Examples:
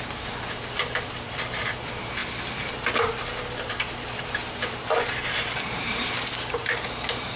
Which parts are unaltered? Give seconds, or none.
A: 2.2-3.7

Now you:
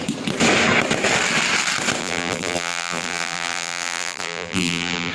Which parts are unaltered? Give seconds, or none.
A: 0.0-2.0

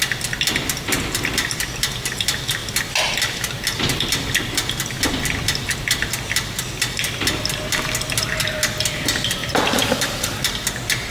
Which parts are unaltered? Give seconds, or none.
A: 0.0-9.4; 10.4-11.1

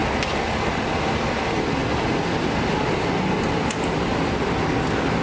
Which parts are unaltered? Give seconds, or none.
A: 1.0-1.8; 2.7-5.2

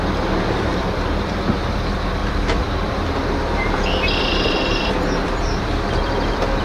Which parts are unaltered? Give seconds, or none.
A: 0.0-0.7; 1.4-2.2

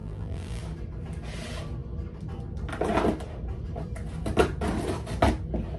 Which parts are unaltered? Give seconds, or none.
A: 0.6-5.8

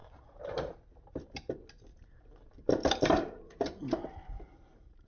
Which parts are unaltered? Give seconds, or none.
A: 0.7-1.9